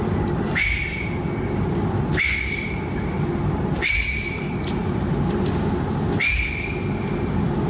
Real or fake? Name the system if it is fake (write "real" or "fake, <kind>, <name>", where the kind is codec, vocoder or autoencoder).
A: real